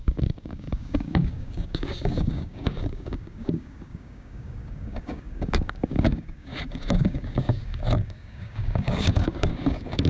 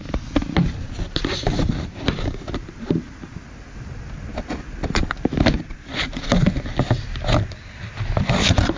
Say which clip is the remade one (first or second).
first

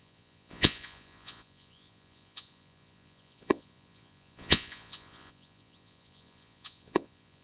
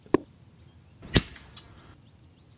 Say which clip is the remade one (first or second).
first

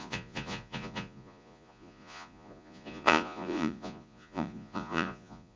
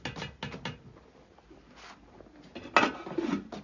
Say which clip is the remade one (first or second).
first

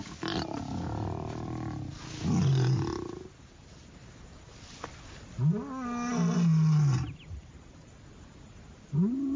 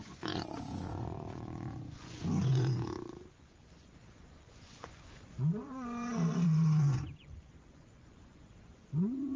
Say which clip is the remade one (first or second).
second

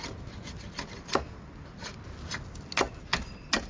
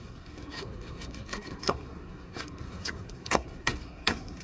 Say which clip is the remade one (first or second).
second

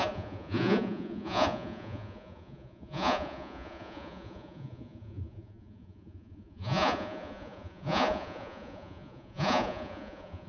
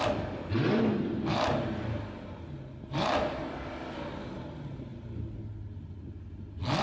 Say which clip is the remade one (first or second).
first